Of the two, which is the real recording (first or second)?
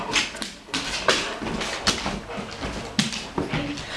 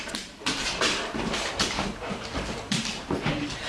first